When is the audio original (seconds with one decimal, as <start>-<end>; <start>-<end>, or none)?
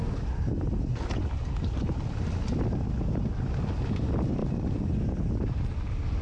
0.0-4.4